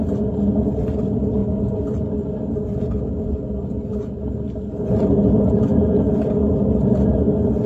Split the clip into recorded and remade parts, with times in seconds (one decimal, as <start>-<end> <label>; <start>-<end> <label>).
0.0-7.7 recorded